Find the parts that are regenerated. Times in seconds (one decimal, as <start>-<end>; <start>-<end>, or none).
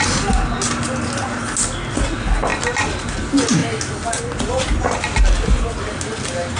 none